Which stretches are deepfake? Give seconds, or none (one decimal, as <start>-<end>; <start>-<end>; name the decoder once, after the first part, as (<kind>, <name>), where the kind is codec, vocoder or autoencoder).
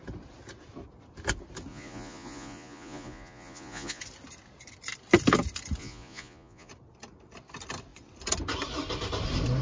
1.7-4.0 (vocoder, Vocos); 5.8-6.7